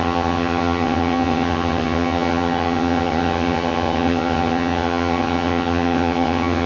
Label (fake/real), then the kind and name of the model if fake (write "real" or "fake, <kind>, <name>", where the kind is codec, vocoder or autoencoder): fake, vocoder, HiFi-GAN